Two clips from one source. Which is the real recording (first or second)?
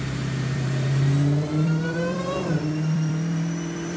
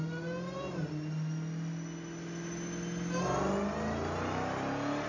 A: second